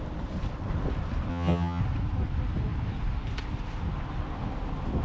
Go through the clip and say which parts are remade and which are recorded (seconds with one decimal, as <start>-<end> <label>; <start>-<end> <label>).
0.0-1.3 recorded; 1.3-1.8 remade; 1.8-5.0 recorded